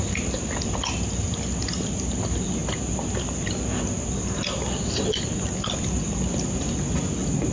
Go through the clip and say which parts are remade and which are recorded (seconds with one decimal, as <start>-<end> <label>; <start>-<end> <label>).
0.0-7.5 recorded